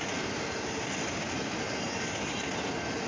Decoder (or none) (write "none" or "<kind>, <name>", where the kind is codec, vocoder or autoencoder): none